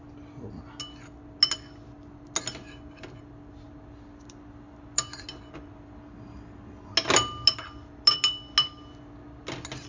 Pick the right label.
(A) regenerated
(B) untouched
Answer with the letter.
B